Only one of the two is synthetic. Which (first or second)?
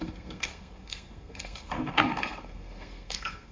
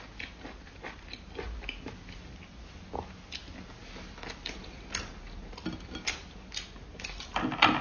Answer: first